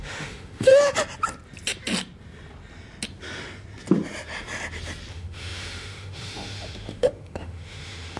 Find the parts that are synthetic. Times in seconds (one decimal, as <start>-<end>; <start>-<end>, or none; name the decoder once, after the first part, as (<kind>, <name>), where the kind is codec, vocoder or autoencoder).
0.0-0.7 (autoencoder, DAC-VAE); 5.1-8.2